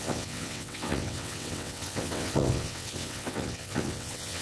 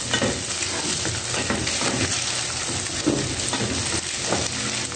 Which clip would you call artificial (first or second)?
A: first